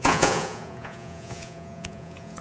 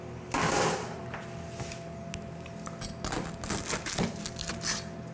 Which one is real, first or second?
second